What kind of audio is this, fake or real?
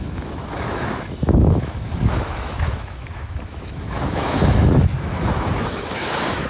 fake